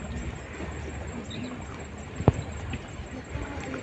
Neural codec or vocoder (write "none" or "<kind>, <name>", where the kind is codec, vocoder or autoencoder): none